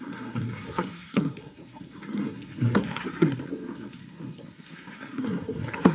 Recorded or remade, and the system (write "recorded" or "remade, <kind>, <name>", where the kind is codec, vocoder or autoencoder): remade, codec, SNAC